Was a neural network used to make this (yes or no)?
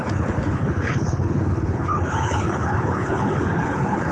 yes